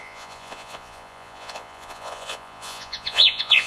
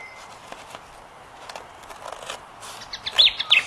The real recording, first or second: second